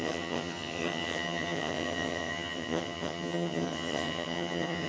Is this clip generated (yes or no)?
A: yes